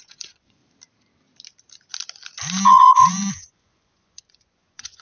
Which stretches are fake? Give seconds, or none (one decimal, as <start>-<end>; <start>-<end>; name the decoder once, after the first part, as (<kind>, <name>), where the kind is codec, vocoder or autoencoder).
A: 0.0-0.6 (vocoder, Vocos); 2.8-5.0